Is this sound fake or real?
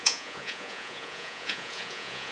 fake